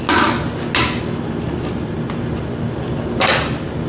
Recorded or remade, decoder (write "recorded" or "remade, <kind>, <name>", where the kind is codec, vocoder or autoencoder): recorded